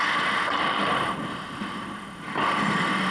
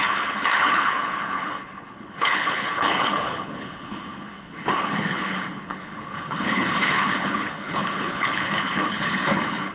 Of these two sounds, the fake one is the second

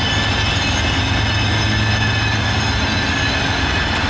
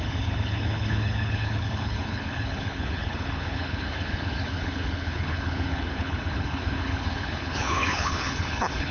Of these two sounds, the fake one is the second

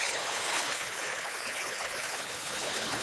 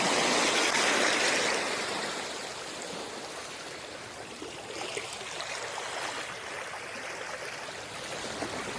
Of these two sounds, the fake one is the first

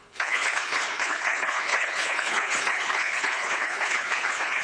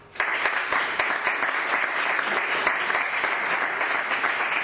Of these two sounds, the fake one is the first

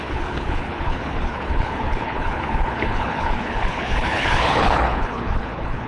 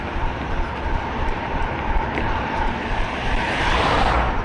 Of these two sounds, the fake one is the first